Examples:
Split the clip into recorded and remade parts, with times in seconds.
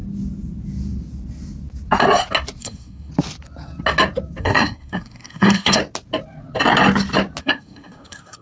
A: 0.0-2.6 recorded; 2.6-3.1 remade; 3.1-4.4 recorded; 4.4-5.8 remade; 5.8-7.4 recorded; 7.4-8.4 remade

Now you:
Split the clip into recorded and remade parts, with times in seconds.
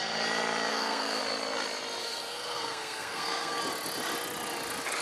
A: 0.0-0.7 recorded; 0.7-1.2 remade; 1.2-2.0 recorded; 2.0-3.6 remade; 3.6-5.0 recorded